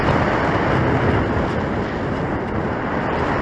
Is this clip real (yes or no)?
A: yes